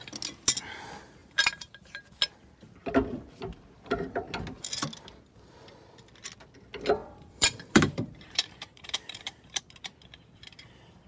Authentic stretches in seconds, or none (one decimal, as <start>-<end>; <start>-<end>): 0.0-1.2; 2.0-7.0; 9.6-11.1